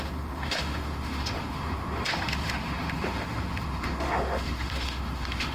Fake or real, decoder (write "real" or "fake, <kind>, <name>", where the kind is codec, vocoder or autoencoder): fake, autoencoder, DAC-VAE